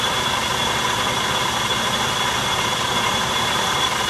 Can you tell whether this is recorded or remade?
recorded